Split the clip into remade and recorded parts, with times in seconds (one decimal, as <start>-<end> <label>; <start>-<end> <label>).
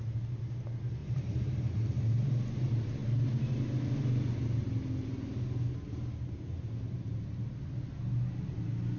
0.0-1.0 recorded; 1.0-1.9 remade; 1.9-9.0 recorded